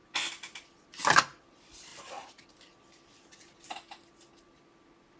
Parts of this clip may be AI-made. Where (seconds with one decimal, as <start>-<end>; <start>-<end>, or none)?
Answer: none